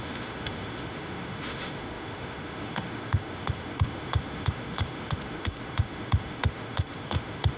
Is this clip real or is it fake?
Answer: fake